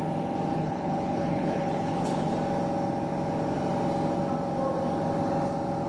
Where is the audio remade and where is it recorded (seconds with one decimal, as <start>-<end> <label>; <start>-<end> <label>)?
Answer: 0.0-0.5 recorded; 0.5-2.3 remade; 2.3-5.9 recorded